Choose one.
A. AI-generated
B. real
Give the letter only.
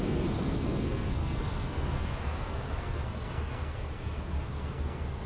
A